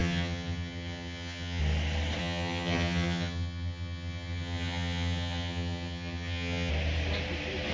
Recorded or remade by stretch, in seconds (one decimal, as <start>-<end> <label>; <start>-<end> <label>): 0.0-1.6 remade; 1.6-2.2 recorded; 2.2-6.7 remade; 6.7-7.7 recorded